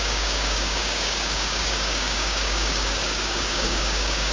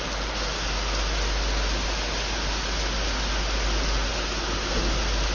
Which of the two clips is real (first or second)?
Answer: second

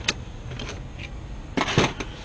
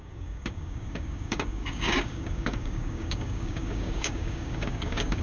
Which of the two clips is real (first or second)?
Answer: first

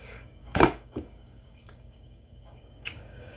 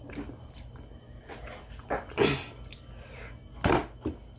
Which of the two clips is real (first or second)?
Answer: second